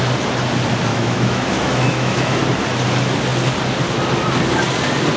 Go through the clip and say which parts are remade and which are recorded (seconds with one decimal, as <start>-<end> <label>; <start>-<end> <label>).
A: 0.0-0.9 recorded; 0.9-2.4 remade; 2.4-5.2 recorded